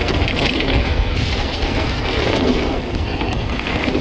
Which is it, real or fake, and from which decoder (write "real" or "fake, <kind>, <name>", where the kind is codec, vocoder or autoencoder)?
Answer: fake, codec, SNAC